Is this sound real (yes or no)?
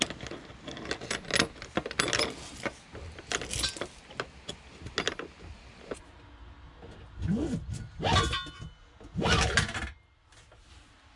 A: yes